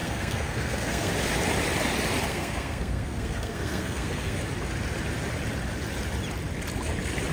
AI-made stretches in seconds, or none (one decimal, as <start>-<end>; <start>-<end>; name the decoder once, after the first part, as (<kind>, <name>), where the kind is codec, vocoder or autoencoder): 0.0-1.1 (codec, SNAC); 2.3-4.4